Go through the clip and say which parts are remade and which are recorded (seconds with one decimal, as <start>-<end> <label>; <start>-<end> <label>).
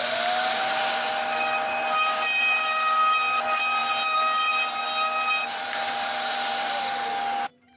0.0-0.4 recorded; 0.4-1.1 remade; 1.1-1.8 recorded; 1.8-2.6 remade; 2.6-3.8 recorded; 3.8-4.8 remade; 4.8-5.4 recorded; 5.4-6.8 remade; 6.8-7.8 recorded